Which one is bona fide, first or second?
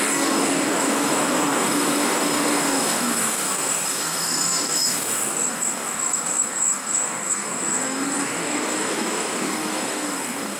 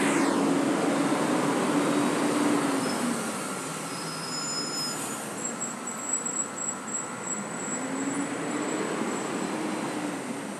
second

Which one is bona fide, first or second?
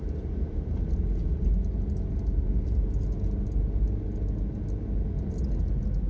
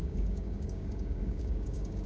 first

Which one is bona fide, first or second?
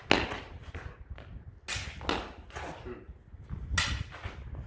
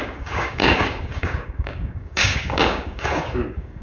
first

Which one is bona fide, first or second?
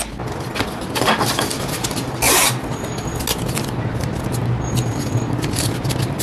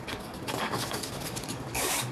first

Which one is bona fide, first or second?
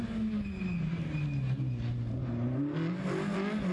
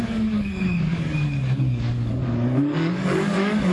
first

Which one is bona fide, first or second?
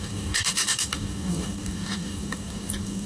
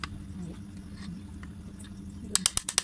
second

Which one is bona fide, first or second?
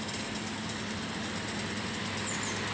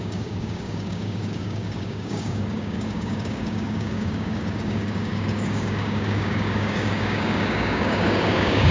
first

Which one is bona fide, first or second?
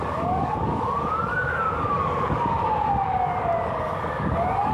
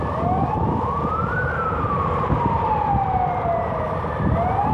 second